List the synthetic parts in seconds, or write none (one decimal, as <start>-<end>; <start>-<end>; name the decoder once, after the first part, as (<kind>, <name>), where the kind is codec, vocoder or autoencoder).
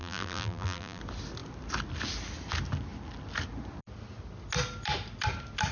0.0-1.0 (vocoder, BigVGAN v2)